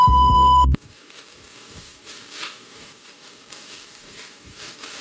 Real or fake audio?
fake